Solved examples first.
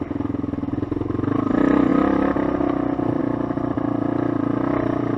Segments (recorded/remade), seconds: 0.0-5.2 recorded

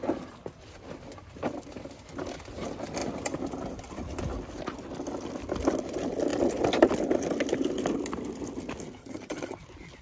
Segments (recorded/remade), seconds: 0.0-9.0 recorded; 9.0-9.6 remade; 9.6-10.0 recorded

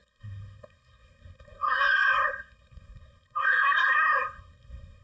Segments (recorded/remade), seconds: 0.0-5.0 remade

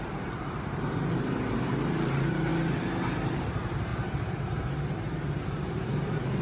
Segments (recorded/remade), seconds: 0.0-2.5 remade; 2.5-3.2 recorded; 3.2-3.9 remade; 3.9-4.4 recorded; 4.4-6.4 remade

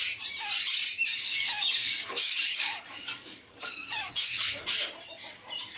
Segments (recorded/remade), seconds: 0.0-1.1 recorded; 1.1-4.6 remade; 4.6-5.8 recorded

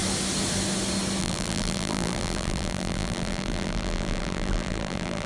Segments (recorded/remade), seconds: 0.0-1.2 recorded; 1.2-5.3 remade

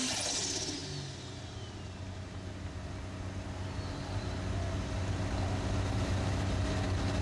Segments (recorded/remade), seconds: 0.0-7.2 recorded